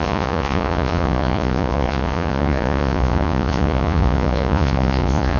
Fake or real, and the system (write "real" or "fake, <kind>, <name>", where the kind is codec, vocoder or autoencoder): fake, vocoder, Vocos